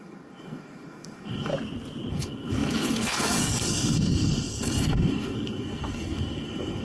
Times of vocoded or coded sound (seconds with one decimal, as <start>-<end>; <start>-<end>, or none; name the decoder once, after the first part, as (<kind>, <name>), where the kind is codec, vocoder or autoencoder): 0.0-1.5 (codec, SNAC); 2.1-6.8